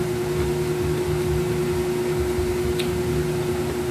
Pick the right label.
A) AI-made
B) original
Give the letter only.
B